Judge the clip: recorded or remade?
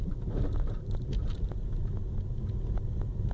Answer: recorded